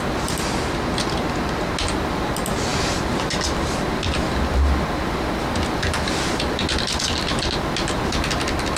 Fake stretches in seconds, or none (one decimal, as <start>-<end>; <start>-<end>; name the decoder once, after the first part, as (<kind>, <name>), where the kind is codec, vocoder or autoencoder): 2.7-3.2 (vocoder, BigVGAN v2)